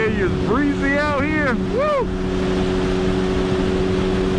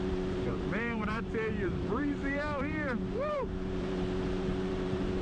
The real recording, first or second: first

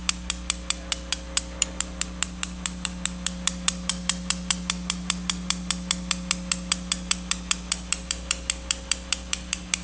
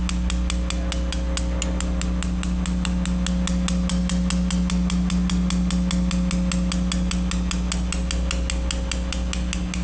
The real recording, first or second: second